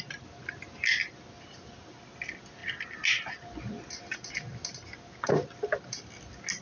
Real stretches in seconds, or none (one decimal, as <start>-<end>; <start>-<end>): 0.0-6.6